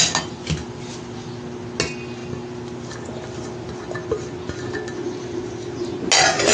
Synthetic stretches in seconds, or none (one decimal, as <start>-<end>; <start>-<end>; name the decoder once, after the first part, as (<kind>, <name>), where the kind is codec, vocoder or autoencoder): none